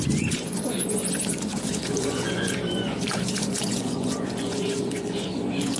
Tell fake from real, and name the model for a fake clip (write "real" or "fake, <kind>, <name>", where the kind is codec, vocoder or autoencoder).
fake, vocoder, Vocos